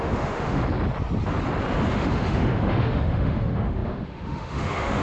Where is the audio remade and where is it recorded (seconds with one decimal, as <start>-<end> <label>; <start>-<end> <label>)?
0.0-0.6 remade; 0.6-1.9 recorded; 1.9-5.0 remade